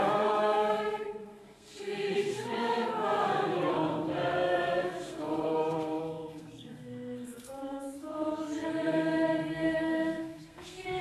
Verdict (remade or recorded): remade